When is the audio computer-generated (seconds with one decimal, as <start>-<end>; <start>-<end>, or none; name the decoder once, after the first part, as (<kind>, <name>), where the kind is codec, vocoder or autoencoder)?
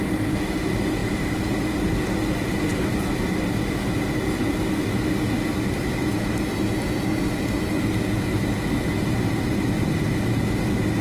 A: none